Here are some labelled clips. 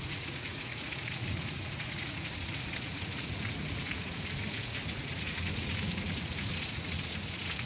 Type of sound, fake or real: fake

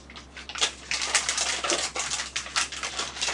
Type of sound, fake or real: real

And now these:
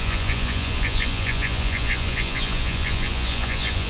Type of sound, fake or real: fake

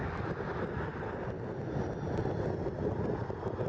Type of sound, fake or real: real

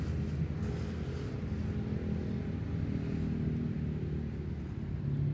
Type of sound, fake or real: real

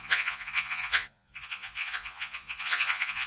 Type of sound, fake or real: fake